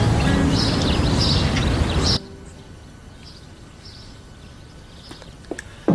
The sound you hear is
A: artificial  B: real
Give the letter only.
B